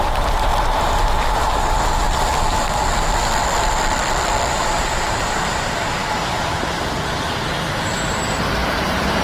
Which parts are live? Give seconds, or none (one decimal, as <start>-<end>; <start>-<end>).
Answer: 0.5-4.5